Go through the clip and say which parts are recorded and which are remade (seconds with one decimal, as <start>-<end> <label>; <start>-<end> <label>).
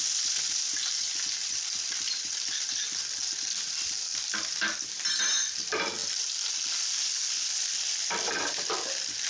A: 0.0-1.4 recorded; 1.4-4.1 remade; 4.1-6.0 recorded; 6.0-8.6 remade; 8.6-9.3 recorded